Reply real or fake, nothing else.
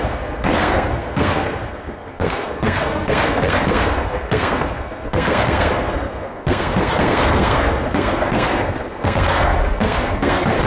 fake